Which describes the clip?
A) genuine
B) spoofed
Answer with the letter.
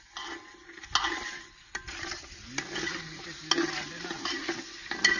A